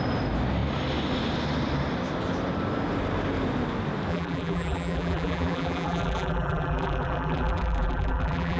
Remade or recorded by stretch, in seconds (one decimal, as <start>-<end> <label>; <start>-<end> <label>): 0.0-4.1 recorded; 4.1-8.6 remade